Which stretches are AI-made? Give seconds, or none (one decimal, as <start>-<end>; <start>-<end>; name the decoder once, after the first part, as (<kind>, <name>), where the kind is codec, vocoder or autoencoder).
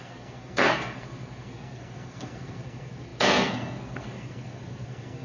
0.0-5.2 (codec, SNAC)